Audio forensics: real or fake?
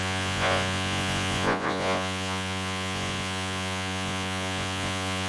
fake